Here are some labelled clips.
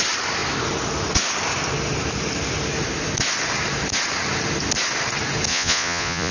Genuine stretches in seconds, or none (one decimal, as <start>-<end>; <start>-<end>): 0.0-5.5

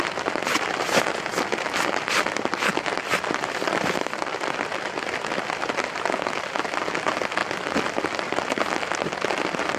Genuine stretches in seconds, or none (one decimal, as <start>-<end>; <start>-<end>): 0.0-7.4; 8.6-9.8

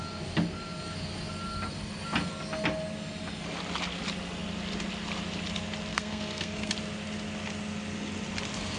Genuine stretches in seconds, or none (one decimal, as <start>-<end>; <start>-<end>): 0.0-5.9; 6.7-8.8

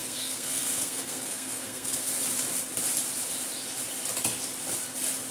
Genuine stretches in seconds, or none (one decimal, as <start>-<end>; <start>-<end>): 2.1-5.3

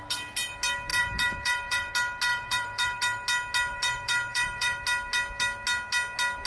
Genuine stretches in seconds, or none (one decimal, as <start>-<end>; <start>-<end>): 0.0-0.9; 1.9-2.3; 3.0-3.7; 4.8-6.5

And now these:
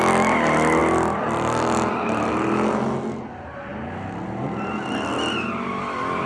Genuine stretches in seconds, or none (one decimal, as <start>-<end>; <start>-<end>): 0.0-6.3

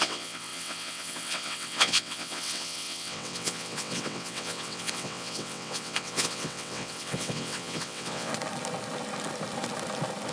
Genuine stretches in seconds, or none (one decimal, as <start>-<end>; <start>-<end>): 8.3-10.3

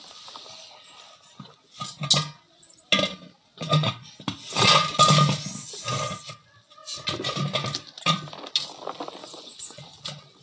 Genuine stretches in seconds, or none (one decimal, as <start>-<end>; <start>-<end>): 0.0-3.5; 4.1-9.2; 10.0-10.4